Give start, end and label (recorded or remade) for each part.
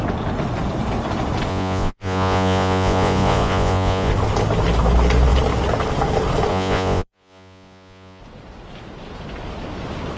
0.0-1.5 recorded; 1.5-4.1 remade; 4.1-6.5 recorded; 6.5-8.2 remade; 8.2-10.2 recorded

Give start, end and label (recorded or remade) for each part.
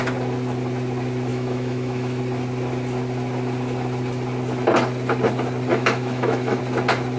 0.0-1.3 recorded; 1.3-2.2 remade; 2.2-5.7 recorded; 5.7-6.6 remade; 6.6-7.2 recorded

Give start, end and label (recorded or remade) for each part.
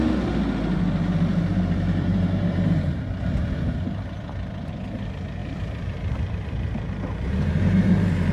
0.0-1.3 recorded; 1.3-3.8 remade; 3.8-5.4 recorded; 5.4-7.9 remade; 7.9-8.3 recorded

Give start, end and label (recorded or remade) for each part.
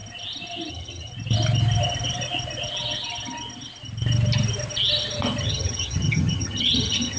0.0-0.7 recorded; 0.7-1.1 remade; 1.1-5.4 recorded; 5.4-7.2 remade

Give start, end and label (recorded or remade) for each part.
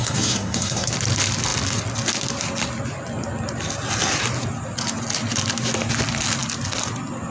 0.0-0.9 remade; 0.9-7.3 recorded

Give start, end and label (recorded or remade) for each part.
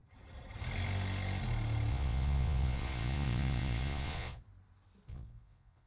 0.0-1.9 recorded; 1.9-4.4 remade; 4.4-5.1 recorded; 5.1-5.9 remade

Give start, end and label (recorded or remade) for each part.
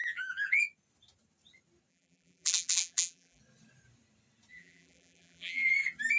0.0-0.6 remade; 0.6-1.9 recorded; 1.9-3.4 remade; 3.4-4.5 recorded; 4.5-5.7 remade; 5.7-6.2 recorded